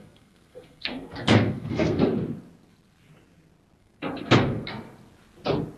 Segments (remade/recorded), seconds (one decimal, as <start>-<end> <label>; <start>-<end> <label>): 0.0-2.1 remade; 2.1-3.8 recorded; 3.8-4.7 remade; 4.7-5.8 recorded